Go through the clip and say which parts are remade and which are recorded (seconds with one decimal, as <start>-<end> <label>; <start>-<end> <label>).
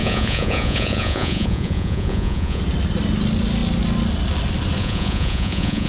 0.0-2.6 remade; 2.6-4.8 recorded; 4.8-5.9 remade